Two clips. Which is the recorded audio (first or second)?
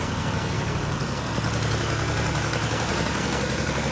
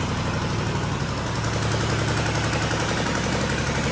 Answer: second